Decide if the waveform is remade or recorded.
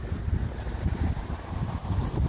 recorded